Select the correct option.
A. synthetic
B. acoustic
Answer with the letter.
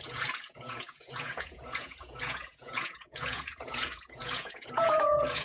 A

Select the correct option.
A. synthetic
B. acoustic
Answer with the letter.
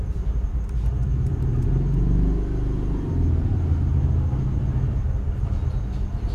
B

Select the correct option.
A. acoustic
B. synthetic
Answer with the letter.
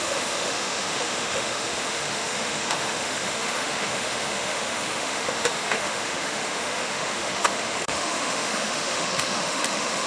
B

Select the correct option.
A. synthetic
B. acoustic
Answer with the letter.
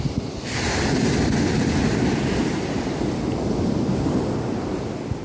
B